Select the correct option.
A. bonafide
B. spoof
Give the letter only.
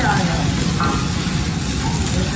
A